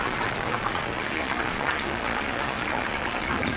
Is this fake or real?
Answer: fake